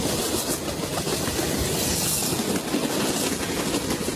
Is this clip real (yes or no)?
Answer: yes